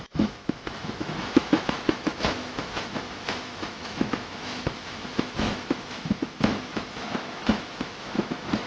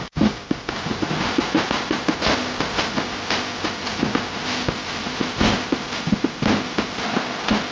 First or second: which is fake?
first